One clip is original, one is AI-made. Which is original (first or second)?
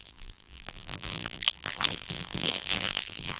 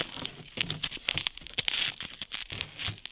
second